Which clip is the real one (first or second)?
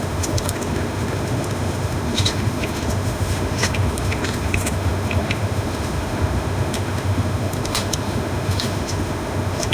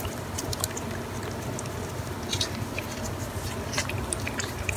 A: second